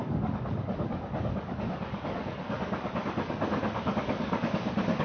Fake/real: fake